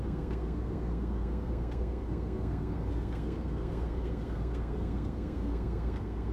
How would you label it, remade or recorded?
remade